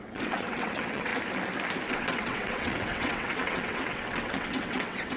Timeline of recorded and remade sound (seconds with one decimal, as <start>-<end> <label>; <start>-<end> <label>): 0.0-1.1 remade; 1.1-1.9 recorded; 1.9-5.2 remade